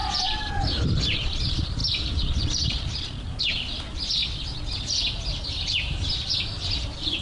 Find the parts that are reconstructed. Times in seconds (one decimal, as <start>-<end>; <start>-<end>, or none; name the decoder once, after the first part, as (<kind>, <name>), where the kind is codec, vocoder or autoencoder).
0.5-4.2 (vocoder, BigVGAN v2); 5.3-7.2